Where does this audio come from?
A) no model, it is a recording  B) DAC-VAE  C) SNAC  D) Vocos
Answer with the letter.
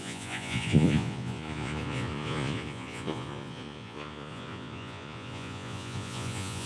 D